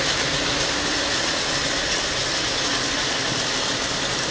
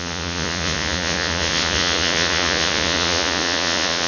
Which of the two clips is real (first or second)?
first